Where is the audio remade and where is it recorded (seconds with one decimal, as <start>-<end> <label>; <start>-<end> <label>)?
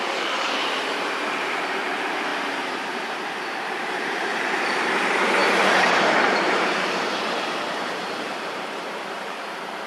0.0-9.9 remade